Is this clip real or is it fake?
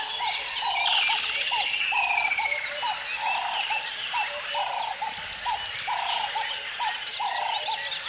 real